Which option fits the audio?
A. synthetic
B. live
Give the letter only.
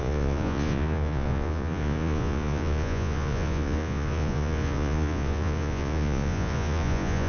A